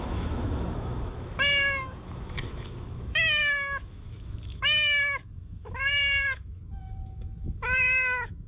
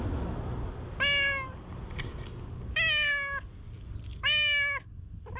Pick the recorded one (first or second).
second